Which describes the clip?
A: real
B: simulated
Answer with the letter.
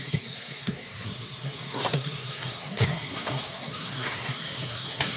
B